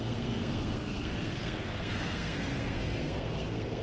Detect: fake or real fake